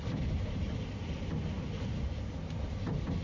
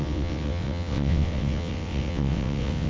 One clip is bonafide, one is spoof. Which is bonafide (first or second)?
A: first